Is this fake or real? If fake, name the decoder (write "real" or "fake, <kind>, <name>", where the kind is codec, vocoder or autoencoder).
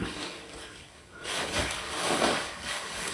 fake, codec, DAC